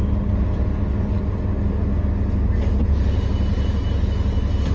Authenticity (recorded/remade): recorded